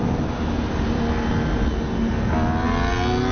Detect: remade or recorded recorded